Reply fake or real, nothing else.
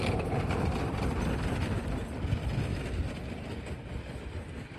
real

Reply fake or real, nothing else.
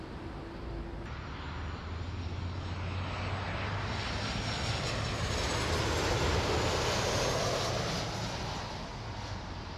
real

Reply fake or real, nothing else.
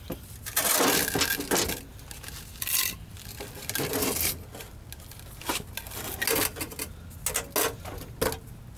real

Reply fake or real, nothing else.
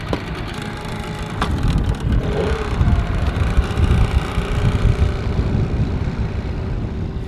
real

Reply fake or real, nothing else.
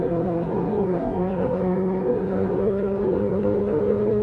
fake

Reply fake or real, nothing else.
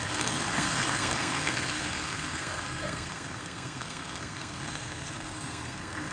fake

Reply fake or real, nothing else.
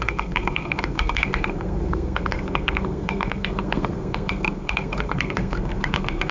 fake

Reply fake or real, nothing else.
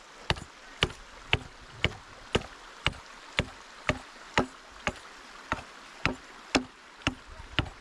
real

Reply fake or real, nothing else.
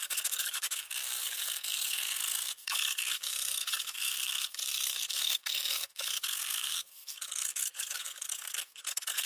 fake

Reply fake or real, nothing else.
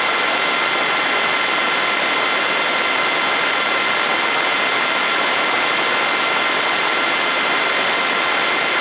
real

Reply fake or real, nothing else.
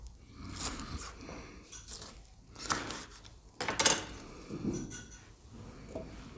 real